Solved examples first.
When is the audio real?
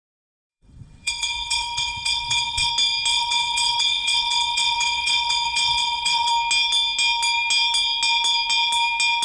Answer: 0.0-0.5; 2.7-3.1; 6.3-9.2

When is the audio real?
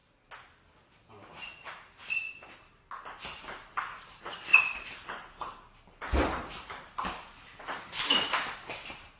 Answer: 0.0-9.2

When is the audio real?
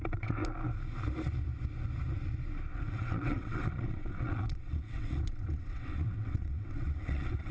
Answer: 0.4-2.7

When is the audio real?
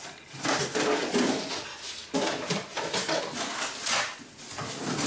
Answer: 0.0-5.1